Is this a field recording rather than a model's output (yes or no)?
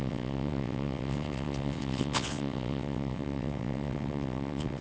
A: no